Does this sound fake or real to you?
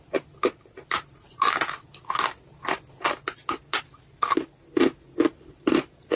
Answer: real